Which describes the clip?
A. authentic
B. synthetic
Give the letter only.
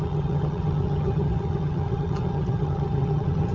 B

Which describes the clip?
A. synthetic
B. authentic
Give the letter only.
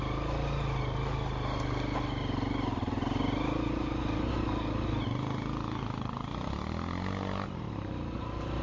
B